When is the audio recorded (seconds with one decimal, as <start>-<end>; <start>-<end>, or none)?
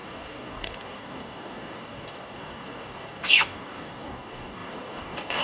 none